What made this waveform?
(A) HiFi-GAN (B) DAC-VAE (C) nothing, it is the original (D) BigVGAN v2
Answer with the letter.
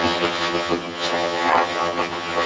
A